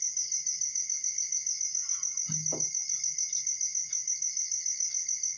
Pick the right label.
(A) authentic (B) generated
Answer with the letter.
A